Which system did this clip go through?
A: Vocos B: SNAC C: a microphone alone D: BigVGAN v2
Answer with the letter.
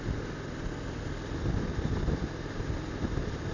C